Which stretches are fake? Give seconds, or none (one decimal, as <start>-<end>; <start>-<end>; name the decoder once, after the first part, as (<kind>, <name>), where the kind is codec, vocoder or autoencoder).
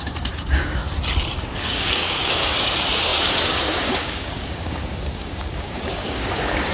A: 0.0-0.8 (codec, DAC); 1.5-6.7